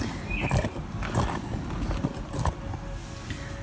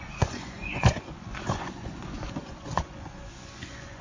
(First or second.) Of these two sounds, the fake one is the second